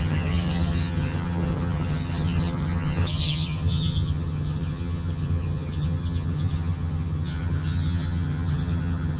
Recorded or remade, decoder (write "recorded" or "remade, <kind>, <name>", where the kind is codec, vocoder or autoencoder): remade, vocoder, HiFi-GAN